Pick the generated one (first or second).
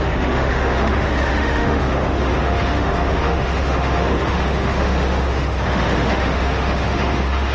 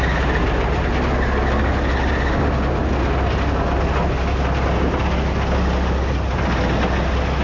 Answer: first